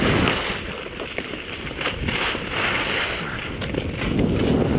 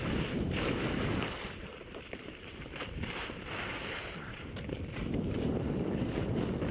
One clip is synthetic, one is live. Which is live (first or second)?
first